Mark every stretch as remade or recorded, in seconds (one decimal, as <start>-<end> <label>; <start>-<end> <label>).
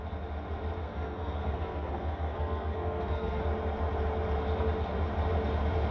0.0-0.8 recorded; 0.8-3.4 remade; 3.4-5.9 recorded